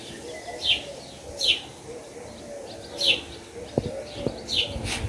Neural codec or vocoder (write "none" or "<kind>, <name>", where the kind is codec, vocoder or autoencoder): none